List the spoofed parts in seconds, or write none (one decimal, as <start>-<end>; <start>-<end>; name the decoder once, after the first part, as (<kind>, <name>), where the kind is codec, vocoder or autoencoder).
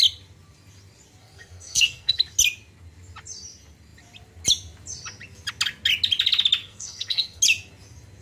1.2-2.2 (codec, SNAC); 6.6-7.4